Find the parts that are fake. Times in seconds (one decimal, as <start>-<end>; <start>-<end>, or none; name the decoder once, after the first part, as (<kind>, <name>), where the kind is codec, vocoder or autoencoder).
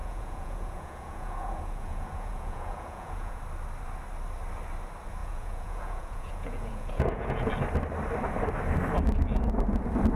0.0-3.4 (vocoder, Vocos); 5.2-7.5